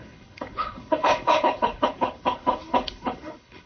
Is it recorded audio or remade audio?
remade